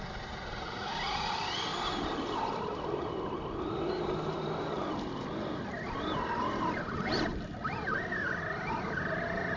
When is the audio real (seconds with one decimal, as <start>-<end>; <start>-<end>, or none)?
0.0-9.6